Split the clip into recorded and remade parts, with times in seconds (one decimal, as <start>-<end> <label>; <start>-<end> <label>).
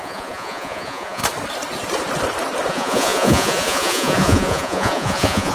0.0-1.2 remade; 1.2-2.7 recorded; 2.7-5.5 remade